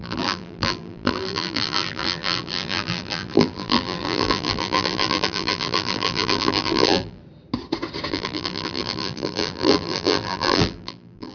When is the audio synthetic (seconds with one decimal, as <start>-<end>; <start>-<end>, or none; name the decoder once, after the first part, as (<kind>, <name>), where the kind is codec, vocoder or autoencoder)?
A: 0.0-7.2 (vocoder, BigVGAN v2); 8.1-11.3